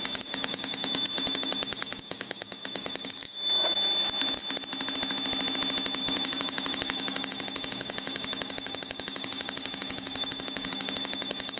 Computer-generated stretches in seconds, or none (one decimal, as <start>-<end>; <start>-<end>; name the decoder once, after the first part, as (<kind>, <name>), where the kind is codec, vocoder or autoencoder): 0.0-3.9 (codec, DAC); 6.0-11.6